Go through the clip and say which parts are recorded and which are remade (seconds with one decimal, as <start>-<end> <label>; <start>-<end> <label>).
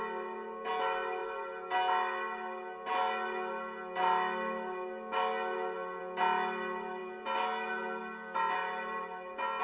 0.0-9.6 recorded